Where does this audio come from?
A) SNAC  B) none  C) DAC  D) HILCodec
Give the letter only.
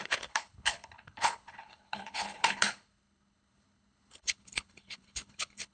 D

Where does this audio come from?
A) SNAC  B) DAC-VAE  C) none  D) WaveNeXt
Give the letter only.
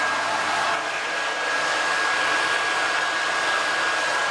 C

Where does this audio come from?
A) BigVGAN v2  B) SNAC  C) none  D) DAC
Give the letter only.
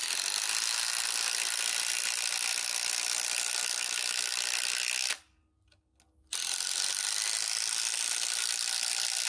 C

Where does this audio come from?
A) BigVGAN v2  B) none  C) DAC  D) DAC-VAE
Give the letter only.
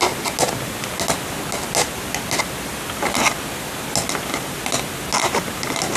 B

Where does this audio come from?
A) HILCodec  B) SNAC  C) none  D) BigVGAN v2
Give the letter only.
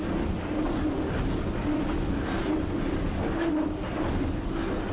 C